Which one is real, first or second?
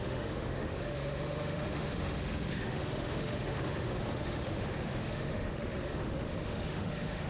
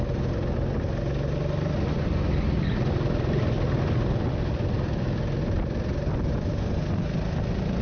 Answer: second